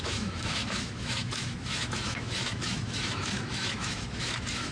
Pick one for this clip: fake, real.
fake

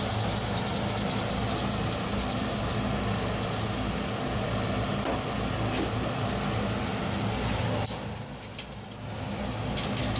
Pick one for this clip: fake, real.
real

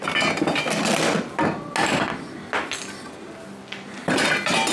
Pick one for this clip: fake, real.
real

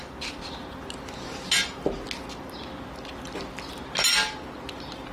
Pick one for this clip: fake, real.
real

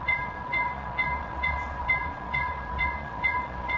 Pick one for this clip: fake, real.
fake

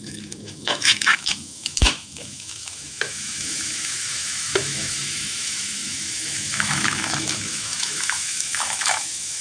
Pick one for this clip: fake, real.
fake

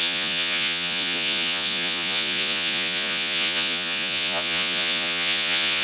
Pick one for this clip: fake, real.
fake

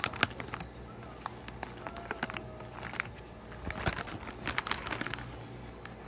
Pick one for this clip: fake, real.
real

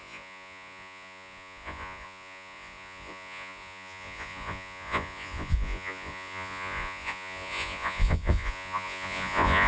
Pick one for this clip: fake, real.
fake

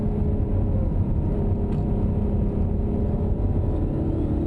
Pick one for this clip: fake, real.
real